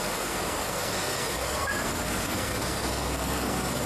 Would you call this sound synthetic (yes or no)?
yes